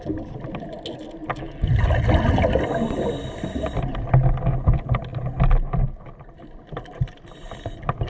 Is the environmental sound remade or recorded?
recorded